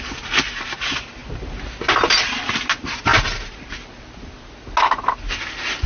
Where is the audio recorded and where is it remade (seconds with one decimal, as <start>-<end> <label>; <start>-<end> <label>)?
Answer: 0.0-5.9 recorded